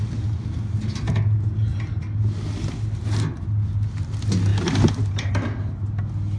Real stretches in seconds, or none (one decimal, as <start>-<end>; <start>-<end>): 0.0-6.4